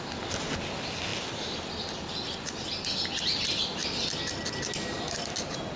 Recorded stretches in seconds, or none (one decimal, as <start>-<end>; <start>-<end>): 0.0-5.8